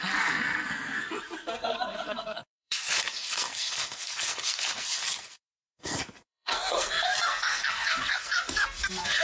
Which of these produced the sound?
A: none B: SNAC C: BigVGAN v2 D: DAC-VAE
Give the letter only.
B